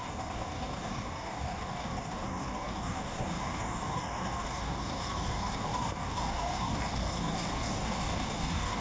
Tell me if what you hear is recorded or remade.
remade